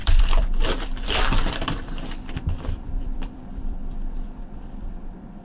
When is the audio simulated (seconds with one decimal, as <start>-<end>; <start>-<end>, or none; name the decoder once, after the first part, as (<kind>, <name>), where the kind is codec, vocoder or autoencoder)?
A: 0.0-5.4 (vocoder, BigVGAN v2)